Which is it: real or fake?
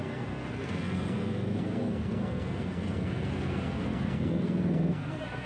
fake